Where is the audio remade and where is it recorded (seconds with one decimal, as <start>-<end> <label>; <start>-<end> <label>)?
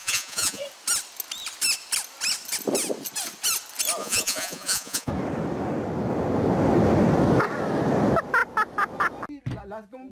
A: 0.0-0.6 remade; 0.6-4.0 recorded; 4.0-5.1 remade; 5.1-10.1 recorded